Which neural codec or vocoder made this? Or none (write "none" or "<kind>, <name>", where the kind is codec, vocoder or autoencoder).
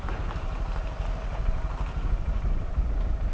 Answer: none